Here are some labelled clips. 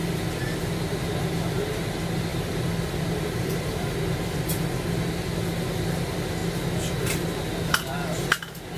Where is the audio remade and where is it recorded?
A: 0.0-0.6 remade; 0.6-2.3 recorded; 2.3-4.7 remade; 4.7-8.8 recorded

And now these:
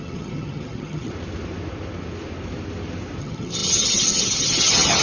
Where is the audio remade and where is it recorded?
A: 0.0-1.1 remade; 1.1-3.2 recorded; 3.2-5.0 remade

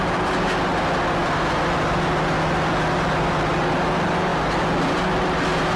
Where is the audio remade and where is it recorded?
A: 0.0-5.8 recorded

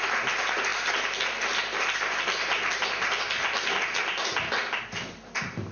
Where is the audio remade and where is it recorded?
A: 0.0-5.7 recorded

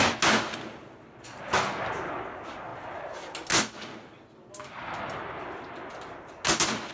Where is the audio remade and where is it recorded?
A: 0.0-6.9 recorded

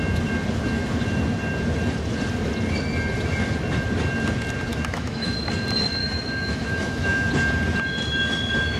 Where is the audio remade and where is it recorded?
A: 0.0-4.7 recorded; 4.7-5.3 remade; 5.3-6.0 recorded; 6.0-7.3 remade; 7.3-8.8 recorded